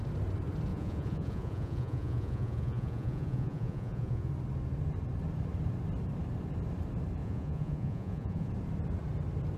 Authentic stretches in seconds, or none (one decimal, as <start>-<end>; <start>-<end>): 0.0-0.7; 4.3-7.2; 8.5-9.6